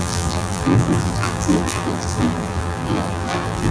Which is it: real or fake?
fake